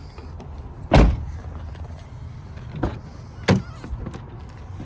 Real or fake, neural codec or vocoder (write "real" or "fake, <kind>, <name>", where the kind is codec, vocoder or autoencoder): real